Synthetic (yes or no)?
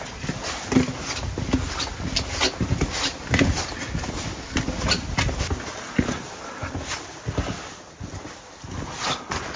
no